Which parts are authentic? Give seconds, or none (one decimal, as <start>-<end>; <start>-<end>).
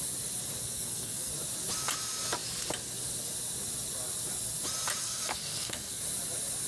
0.0-0.6; 1.3-5.0; 6.0-6.7